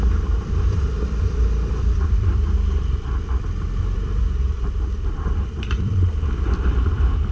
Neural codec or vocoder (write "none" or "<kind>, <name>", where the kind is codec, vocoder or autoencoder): vocoder, BigVGAN v2